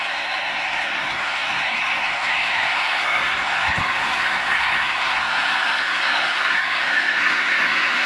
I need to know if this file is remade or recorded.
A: remade